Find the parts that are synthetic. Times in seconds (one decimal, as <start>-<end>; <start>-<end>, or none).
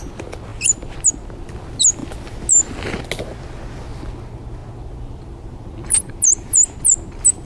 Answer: none